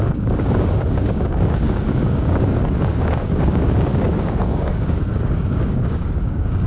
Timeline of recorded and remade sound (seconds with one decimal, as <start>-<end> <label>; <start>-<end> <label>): 0.0-6.7 remade